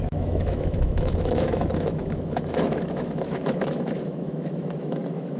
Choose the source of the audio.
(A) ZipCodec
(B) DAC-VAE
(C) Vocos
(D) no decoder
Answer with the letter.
B